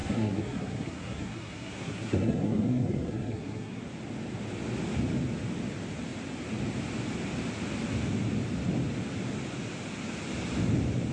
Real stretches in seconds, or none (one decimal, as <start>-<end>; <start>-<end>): 3.8-11.1